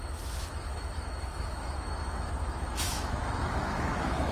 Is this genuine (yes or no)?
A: no